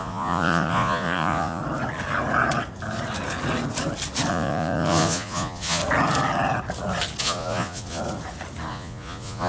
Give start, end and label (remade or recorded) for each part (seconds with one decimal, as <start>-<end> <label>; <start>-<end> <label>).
0.0-1.6 remade; 1.6-4.3 recorded; 4.3-5.8 remade; 5.8-7.2 recorded; 7.2-8.0 remade; 8.0-8.7 recorded; 8.7-9.5 remade